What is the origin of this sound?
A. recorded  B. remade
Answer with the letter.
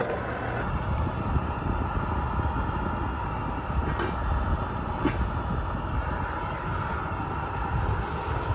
A